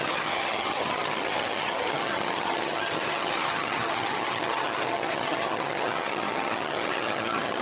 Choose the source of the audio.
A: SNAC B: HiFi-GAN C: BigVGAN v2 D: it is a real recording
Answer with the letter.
B